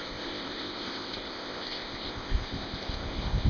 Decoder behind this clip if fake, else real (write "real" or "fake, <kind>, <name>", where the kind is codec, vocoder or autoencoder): fake, codec, ZipCodec